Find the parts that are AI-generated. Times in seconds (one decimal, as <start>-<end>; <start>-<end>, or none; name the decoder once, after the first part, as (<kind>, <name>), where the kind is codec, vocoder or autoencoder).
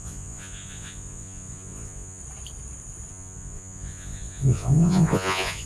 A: 0.0-2.2 (vocoder, Vocos); 3.1-5.7